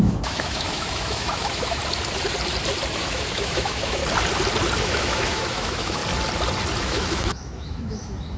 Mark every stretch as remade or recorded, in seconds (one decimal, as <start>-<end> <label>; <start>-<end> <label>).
0.0-1.8 remade; 1.8-3.0 recorded; 3.0-4.0 remade; 4.0-4.8 recorded; 4.8-6.0 remade; 6.0-6.8 recorded; 6.8-8.4 remade

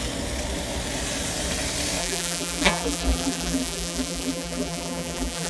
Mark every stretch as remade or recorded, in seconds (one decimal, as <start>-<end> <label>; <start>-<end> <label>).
0.0-2.0 recorded; 2.0-5.5 remade

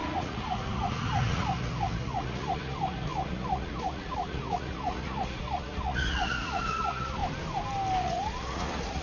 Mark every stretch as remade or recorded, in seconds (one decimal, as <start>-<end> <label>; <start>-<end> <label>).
0.0-7.2 remade; 7.2-8.0 recorded; 8.0-9.0 remade

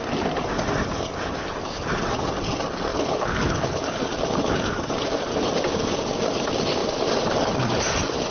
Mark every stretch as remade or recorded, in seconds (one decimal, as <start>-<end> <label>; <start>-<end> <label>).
0.0-2.9 recorded; 2.9-4.0 remade; 4.0-8.3 recorded

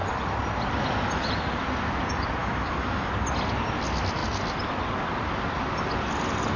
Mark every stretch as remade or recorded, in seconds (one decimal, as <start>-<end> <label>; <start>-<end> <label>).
0.0-2.4 recorded; 2.4-3.1 remade; 3.1-6.6 recorded

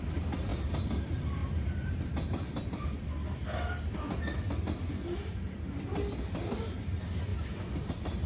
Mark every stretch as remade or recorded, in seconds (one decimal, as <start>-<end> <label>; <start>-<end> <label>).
0.0-8.3 remade

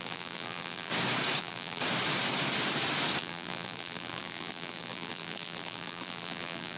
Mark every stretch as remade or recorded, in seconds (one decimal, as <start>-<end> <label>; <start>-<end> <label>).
0.0-0.9 remade; 0.9-1.4 recorded; 1.4-1.8 remade; 1.8-3.2 recorded; 3.2-6.8 remade

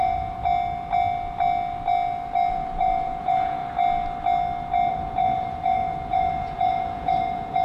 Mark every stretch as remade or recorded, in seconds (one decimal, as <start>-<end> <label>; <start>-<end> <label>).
0.0-0.4 remade; 0.4-2.5 recorded; 2.5-3.6 remade; 3.6-4.9 recorded; 4.9-7.6 remade